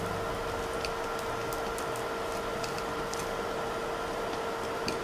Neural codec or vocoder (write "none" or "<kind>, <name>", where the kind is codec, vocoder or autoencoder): none